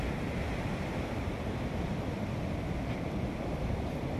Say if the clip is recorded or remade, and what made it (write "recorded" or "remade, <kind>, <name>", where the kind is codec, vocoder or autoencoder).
remade, vocoder, BigVGAN v2